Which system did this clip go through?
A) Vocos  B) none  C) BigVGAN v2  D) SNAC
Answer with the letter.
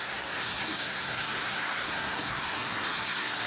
D